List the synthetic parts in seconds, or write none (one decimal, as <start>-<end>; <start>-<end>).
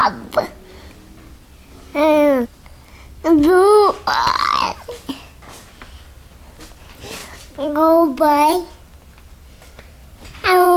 7.2-8.7; 10.0-10.8